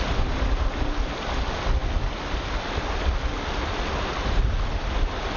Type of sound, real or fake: real